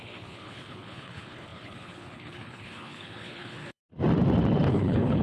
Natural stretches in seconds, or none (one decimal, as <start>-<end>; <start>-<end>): 3.8-4.7